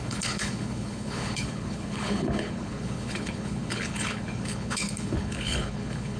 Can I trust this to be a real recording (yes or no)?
no